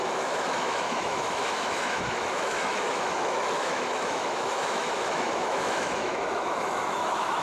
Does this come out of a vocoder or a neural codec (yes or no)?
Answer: yes